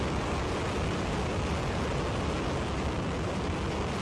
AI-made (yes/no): no